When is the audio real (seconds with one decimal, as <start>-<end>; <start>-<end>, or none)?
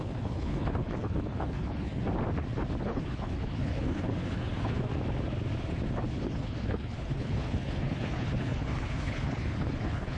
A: 2.0-2.8; 4.9-6.2